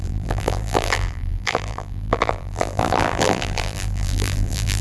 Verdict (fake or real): fake